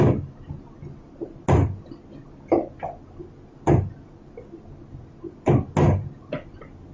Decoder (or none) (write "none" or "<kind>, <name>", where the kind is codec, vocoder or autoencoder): none